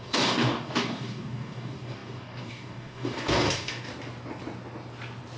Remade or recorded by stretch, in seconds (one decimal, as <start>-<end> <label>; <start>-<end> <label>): 0.0-3.9 remade; 3.9-5.4 recorded